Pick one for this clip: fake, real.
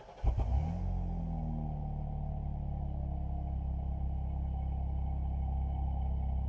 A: real